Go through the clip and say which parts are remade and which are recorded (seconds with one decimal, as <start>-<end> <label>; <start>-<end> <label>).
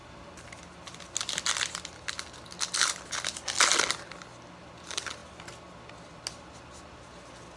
0.0-7.6 recorded